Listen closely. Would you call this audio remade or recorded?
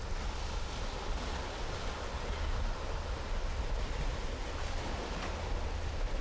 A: recorded